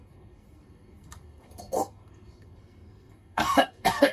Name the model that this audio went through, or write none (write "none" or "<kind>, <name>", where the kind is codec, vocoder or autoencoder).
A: codec, SNAC